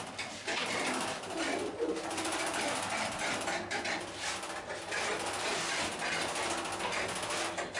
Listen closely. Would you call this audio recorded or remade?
recorded